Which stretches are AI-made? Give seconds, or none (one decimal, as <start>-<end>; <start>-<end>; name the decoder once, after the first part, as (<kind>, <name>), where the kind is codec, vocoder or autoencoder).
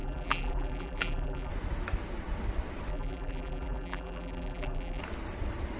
0.0-1.5 (vocoder, BigVGAN v2); 2.9-5.0